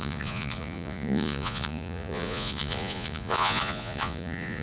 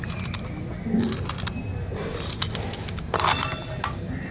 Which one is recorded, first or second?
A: second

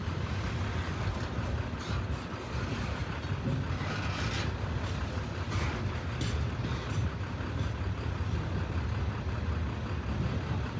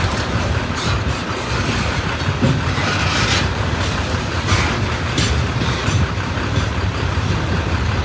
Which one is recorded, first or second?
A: first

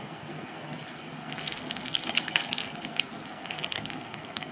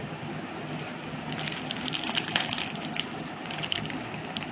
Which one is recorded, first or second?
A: second